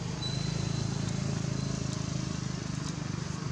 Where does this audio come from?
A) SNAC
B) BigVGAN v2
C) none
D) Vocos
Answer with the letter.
C